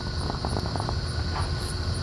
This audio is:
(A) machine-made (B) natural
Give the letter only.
B